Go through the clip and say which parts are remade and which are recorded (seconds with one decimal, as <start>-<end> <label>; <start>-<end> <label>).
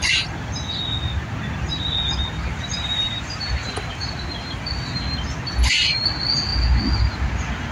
0.0-2.7 recorded; 2.7-4.6 remade; 4.6-7.7 recorded